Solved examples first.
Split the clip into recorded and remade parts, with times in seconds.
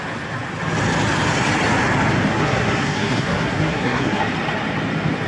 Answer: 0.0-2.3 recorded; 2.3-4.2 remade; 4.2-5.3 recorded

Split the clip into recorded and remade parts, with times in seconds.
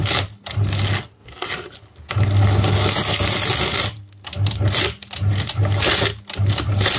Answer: 0.0-7.0 recorded